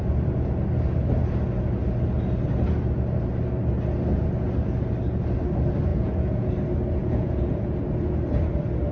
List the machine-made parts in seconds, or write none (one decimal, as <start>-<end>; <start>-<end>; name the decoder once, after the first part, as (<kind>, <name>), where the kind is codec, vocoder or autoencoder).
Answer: 5.9-6.5 (vocoder, Vocos); 7.0-7.6